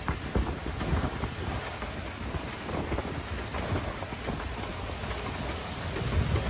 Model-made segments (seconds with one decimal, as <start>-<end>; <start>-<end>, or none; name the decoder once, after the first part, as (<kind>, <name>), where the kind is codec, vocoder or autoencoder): none